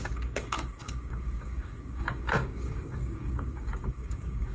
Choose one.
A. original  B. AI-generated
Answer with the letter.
B